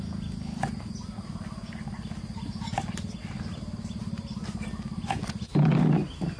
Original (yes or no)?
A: yes